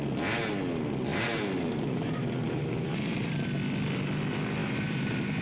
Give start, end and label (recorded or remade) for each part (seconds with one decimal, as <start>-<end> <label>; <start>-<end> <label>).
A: 0.0-1.1 recorded; 1.1-3.4 remade; 3.4-4.6 recorded; 4.6-5.4 remade